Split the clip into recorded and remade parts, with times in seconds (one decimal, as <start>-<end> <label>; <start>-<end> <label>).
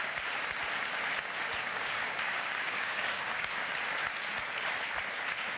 0.0-1.7 recorded; 1.7-3.7 remade; 3.7-5.6 recorded